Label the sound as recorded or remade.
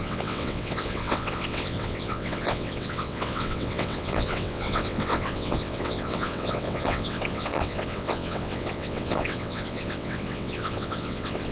remade